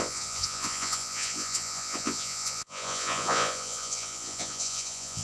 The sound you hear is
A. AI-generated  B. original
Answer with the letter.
A